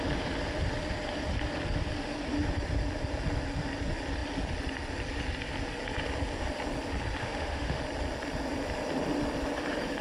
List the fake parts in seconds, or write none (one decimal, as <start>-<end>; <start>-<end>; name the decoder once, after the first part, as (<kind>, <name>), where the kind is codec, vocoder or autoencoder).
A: 7.2-7.8 (autoencoder, DAC-VAE)